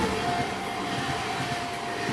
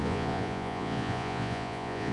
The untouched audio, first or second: first